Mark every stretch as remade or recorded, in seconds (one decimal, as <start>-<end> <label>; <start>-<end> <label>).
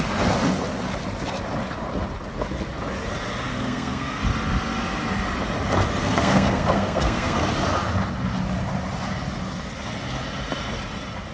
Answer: 0.0-3.5 recorded; 3.5-4.2 remade; 4.2-6.0 recorded; 6.0-7.5 remade; 7.5-11.3 recorded